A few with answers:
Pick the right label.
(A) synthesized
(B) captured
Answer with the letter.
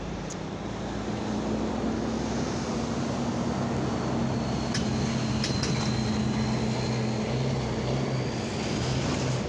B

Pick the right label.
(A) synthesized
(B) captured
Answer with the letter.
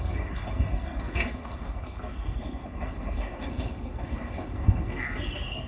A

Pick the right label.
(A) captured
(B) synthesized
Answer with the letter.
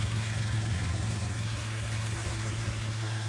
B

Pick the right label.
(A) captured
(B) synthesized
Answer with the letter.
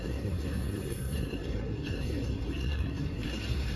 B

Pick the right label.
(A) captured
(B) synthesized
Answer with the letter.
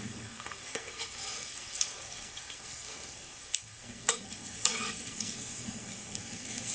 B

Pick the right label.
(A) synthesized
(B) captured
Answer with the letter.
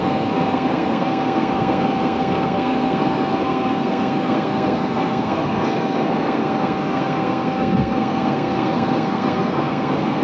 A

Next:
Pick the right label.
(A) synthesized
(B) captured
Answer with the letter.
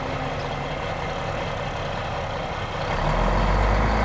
B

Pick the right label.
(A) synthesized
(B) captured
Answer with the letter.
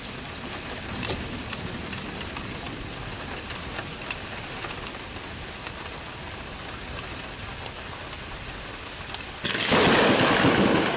B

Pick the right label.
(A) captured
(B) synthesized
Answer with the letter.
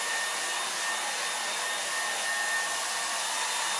A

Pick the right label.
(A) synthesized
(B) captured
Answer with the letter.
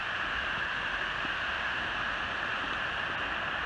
B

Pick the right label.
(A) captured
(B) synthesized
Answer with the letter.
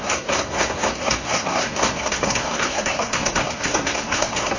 B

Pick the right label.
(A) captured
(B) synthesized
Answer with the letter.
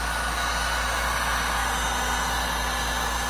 A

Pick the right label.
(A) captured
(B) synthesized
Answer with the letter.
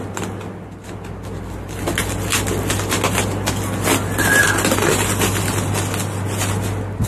A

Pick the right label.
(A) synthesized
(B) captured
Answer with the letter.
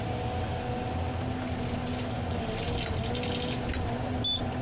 B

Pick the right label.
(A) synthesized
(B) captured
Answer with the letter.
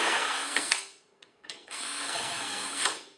A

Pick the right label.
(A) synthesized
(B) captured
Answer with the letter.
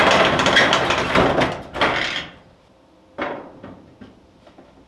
B